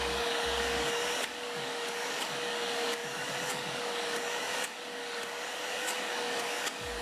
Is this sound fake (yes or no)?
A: yes